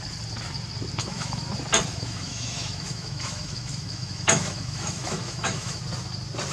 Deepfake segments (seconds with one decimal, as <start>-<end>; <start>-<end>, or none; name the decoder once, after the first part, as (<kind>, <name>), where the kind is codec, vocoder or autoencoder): 1.0-1.5 (autoencoder, DAC-VAE); 1.9-5.8